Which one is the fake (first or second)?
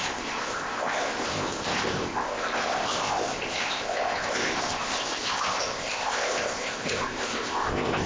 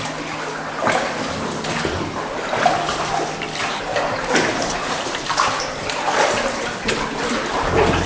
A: first